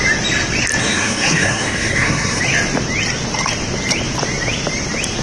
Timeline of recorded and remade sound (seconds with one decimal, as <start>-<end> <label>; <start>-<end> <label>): 0.0-0.8 recorded; 0.8-2.4 remade; 2.4-5.2 recorded